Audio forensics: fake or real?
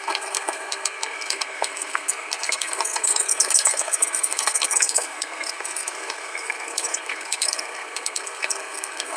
fake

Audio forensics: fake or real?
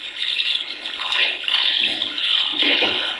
fake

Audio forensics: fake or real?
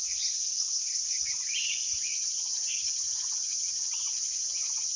real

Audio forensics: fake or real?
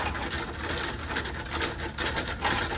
real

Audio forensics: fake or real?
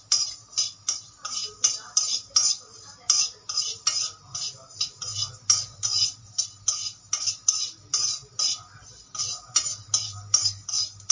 real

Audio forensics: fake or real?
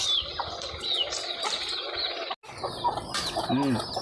real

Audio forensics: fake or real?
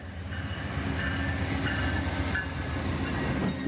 real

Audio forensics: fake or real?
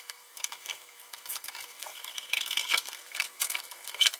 fake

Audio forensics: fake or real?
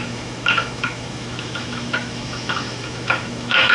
fake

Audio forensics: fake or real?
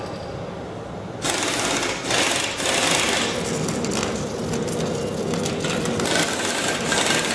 real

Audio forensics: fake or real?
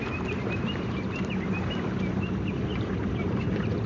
fake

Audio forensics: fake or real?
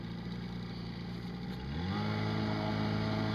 real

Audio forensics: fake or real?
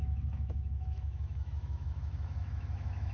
fake